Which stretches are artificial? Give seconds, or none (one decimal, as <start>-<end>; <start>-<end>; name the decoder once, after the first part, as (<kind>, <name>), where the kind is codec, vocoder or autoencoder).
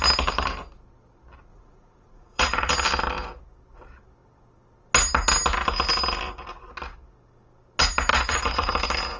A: 1.5-2.7 (vocoder, Vocos); 8.1-8.7